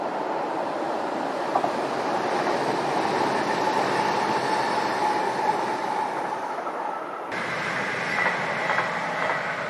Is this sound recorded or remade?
recorded